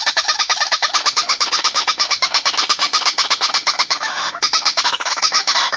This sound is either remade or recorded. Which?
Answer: remade